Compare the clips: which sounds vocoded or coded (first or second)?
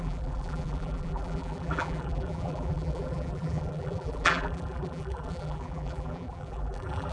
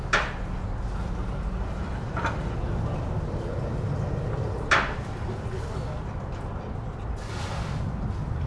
first